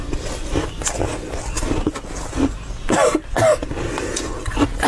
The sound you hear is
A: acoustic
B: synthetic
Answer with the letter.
A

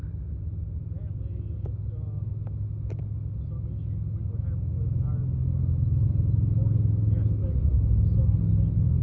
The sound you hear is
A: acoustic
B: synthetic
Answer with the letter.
A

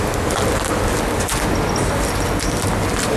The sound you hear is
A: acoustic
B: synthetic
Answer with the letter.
A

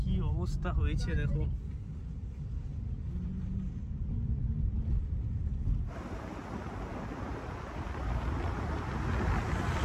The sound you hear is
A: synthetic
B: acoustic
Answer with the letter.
B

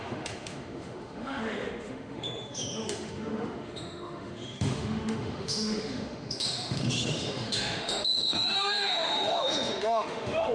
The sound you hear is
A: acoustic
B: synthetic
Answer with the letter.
B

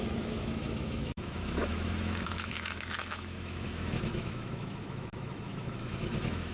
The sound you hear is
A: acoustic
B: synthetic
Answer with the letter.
B